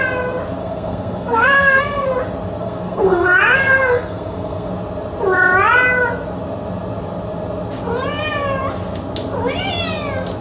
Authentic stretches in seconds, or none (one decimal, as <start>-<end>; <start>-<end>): 0.0-0.6; 2.1-2.6; 4.7-10.4